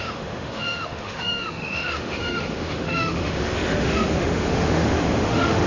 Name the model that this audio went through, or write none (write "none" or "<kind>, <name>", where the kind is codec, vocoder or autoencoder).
autoencoder, DAC-VAE